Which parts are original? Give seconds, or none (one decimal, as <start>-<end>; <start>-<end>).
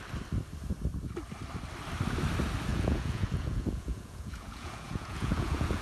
0.0-2.7